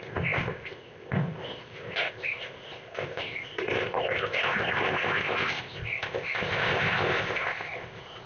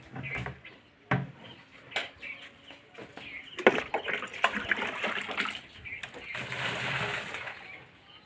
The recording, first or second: second